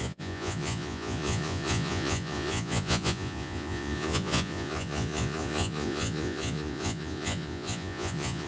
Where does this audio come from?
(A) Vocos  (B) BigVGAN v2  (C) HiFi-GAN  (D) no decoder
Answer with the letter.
A